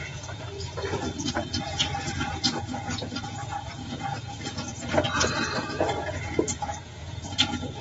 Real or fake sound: fake